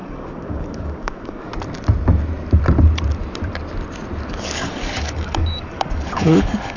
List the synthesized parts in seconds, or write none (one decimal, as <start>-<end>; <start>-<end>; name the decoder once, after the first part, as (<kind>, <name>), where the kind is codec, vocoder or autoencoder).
0.0-1.5 (codec, DAC); 4.3-6.8